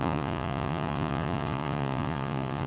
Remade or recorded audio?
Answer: remade